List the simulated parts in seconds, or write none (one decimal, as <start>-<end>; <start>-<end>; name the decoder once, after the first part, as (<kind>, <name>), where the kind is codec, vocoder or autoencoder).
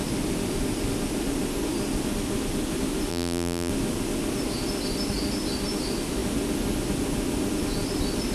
3.1-3.7 (vocoder, BigVGAN v2)